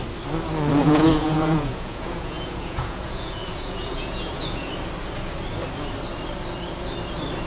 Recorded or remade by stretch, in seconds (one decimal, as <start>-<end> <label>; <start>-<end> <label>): 0.0-0.8 recorded; 0.8-4.7 remade; 4.7-7.5 recorded